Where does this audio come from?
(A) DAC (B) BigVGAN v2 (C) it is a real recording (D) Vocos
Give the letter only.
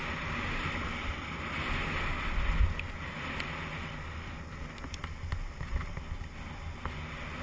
C